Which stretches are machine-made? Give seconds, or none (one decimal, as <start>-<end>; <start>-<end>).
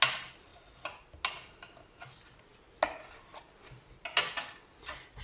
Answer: none